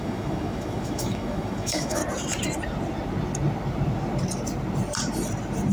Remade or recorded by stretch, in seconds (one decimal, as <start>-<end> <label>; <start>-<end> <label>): 0.0-2.0 remade; 2.0-5.7 recorded